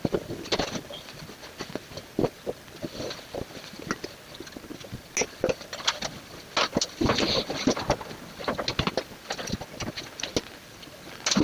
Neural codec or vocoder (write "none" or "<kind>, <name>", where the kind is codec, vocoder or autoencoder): none